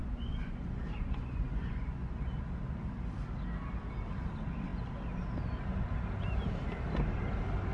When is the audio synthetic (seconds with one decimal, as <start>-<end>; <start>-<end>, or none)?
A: 0.0-2.2